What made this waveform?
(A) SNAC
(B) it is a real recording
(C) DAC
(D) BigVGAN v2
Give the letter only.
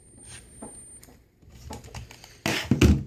B